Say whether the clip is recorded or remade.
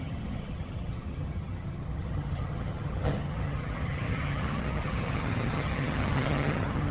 remade